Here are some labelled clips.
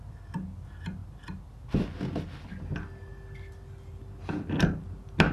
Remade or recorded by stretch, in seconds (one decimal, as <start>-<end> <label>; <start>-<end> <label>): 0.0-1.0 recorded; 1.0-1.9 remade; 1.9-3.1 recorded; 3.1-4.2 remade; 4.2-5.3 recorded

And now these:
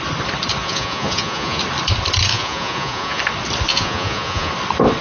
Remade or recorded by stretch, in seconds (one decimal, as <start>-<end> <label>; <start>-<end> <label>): 0.0-0.6 recorded; 0.6-1.6 remade; 1.6-2.3 recorded; 2.3-3.2 remade; 3.2-3.7 recorded; 3.7-4.5 remade; 4.5-5.0 recorded

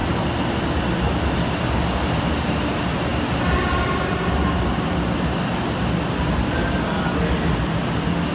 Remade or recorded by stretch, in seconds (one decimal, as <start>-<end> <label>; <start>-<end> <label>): 0.0-8.3 recorded

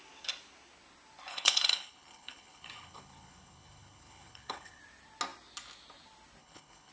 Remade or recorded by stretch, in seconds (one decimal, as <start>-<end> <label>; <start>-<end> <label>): 0.0-1.3 recorded; 1.3-4.8 remade; 4.8-6.4 recorded; 6.4-6.9 remade